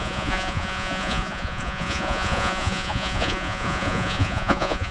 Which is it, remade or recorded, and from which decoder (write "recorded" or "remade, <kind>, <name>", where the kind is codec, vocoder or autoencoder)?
remade, vocoder, Vocos